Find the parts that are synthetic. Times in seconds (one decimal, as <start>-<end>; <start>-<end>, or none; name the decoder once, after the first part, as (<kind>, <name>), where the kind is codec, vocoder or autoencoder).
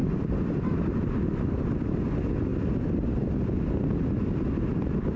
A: 0.0-2.1 (vocoder, BigVGAN v2)